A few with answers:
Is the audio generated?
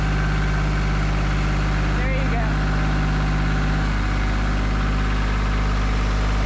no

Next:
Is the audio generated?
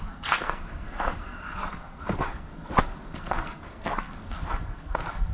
yes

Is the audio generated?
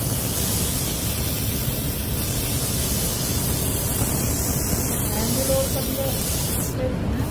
no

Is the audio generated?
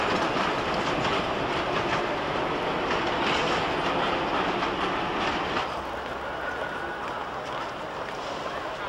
no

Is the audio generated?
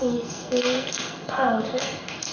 yes